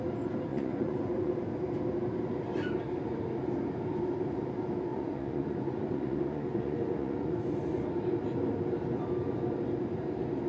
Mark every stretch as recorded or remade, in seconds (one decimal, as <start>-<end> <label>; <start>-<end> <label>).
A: 0.0-0.5 recorded; 0.5-1.3 remade; 1.3-4.9 recorded; 4.9-7.4 remade; 7.4-10.5 recorded